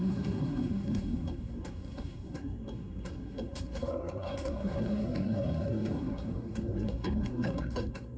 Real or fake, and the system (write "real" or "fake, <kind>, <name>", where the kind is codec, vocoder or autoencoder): fake, codec, SNAC